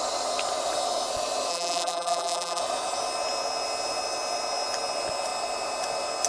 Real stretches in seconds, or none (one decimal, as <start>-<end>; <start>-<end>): 0.0-1.5; 2.6-6.3